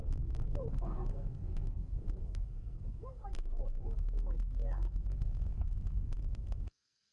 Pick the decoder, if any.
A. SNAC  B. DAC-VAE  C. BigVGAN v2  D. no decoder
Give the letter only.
A